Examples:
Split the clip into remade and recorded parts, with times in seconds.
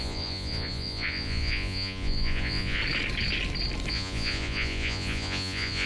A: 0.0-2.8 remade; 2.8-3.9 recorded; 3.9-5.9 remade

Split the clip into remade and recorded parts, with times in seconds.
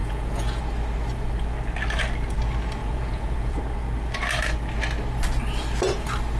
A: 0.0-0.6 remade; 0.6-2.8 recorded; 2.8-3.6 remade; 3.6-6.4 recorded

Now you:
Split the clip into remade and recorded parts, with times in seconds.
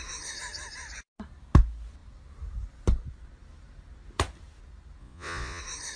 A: 0.0-5.0 recorded; 5.0-5.6 remade; 5.6-6.0 recorded